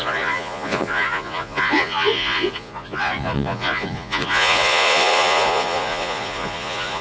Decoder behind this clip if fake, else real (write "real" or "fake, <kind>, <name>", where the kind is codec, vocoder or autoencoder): fake, vocoder, Vocos